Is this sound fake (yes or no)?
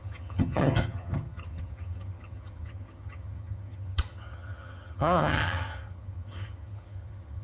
yes